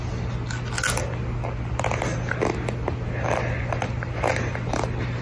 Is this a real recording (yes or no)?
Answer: yes